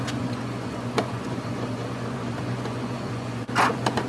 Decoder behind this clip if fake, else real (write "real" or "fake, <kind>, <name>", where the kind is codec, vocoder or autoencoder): fake, vocoder, Vocos